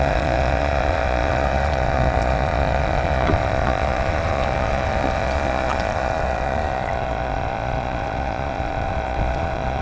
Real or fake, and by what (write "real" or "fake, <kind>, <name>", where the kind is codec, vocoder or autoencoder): fake, vocoder, Vocos